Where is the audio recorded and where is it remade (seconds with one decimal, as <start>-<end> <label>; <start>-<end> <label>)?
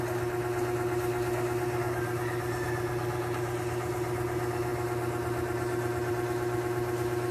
0.0-7.3 recorded